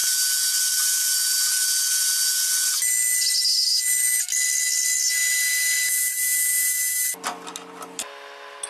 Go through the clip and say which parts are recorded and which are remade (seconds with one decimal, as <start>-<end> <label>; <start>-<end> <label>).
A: 0.0-8.7 recorded